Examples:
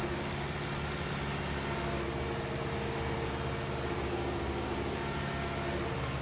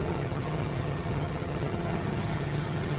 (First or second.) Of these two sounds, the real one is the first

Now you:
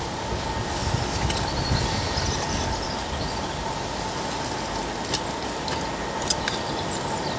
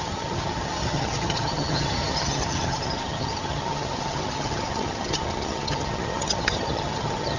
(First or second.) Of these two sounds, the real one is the first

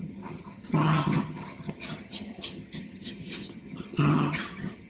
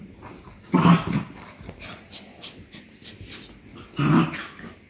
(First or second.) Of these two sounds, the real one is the second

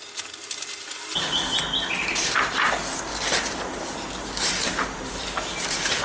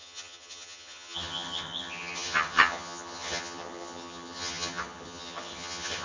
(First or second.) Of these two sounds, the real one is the first